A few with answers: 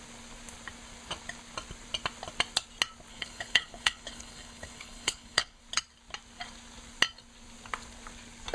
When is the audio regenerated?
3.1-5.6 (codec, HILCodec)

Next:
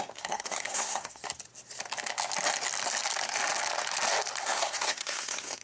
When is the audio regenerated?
0.0-1.2 (codec, SNAC); 4.4-5.6

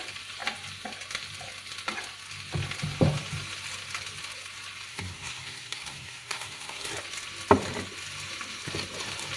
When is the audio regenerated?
4.9-6.9 (codec, SNAC)

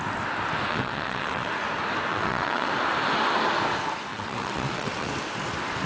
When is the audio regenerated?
0.7-1.5 (vocoder, WaveNeXt); 2.1-2.7; 4.1-5.1

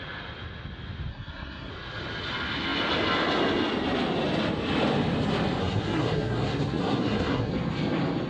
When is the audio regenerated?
1.1-1.7 (codec, SNAC); 5.6-7.5

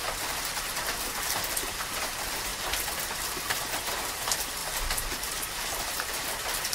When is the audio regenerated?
0.0-2.5 (vocoder, BigVGAN v2); 4.0-4.6; 5.7-6.7

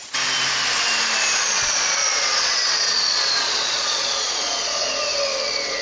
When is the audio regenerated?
1.4-4.9 (vocoder, Vocos)

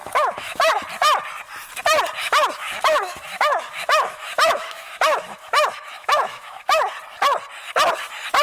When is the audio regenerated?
0.0-0.7 (autoencoder, DAC-VAE); 2.2-6.8